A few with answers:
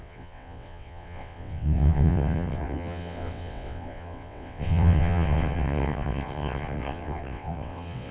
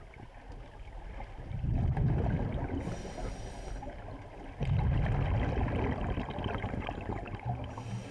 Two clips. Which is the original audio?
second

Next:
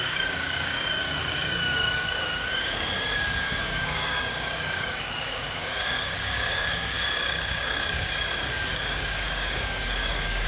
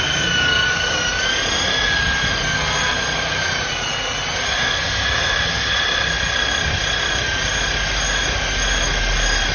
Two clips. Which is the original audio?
second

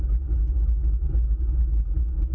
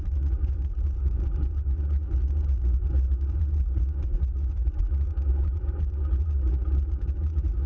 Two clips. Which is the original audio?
first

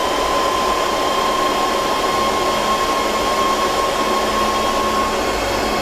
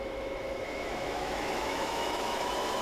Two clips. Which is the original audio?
first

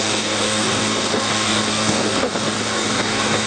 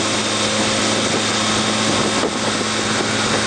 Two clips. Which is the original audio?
second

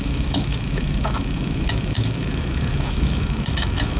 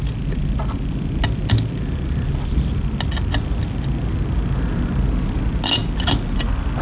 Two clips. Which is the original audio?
second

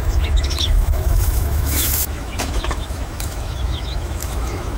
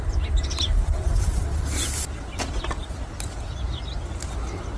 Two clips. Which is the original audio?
second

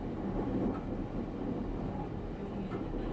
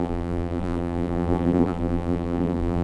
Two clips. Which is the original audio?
first